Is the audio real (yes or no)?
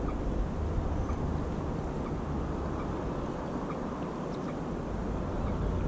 yes